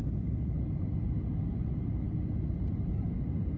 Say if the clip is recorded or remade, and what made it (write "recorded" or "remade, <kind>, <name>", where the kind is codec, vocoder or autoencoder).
recorded